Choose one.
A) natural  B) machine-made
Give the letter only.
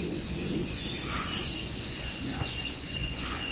B